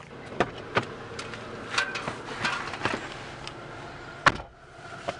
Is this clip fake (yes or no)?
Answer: no